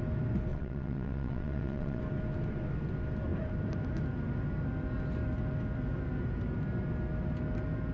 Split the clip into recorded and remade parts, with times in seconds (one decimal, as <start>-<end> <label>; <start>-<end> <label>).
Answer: 0.0-0.5 recorded; 0.5-2.0 remade; 2.0-7.9 recorded

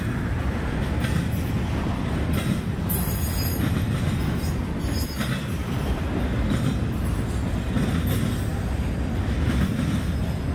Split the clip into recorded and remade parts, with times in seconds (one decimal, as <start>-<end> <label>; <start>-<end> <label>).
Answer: 0.0-10.5 recorded

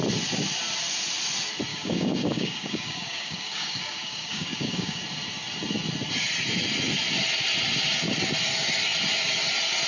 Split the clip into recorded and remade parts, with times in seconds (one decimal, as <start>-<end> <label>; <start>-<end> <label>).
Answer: 0.0-1.7 recorded; 1.7-5.0 remade; 5.0-9.9 recorded

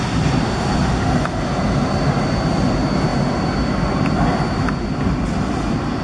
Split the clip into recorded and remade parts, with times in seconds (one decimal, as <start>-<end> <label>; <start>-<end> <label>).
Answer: 0.0-6.0 recorded